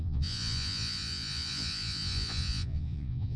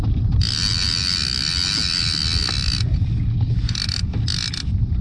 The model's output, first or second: first